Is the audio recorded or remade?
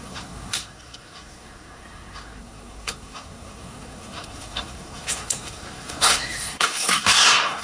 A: remade